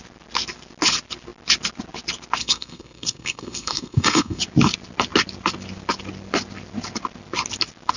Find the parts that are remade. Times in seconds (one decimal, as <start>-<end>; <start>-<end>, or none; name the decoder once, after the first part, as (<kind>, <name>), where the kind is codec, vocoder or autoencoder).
2.4-4.4 (codec, SNAC)